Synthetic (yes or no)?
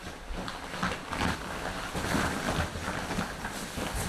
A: no